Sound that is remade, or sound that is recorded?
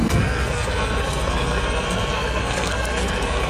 remade